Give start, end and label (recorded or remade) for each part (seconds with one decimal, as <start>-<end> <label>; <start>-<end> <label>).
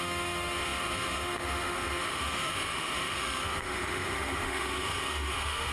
0.0-5.7 remade